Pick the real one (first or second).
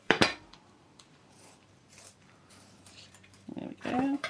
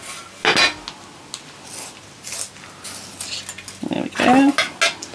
second